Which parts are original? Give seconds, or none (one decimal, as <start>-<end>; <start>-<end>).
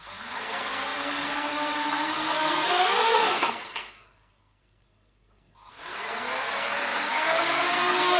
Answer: none